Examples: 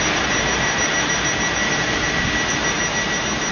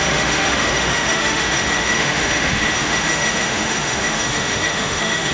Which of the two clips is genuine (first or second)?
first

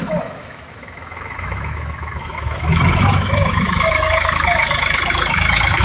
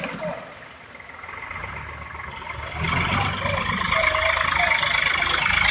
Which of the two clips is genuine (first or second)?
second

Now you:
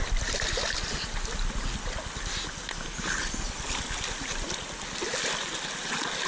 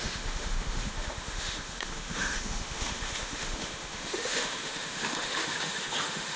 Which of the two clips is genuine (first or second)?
first